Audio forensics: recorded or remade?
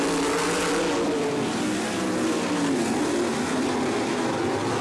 recorded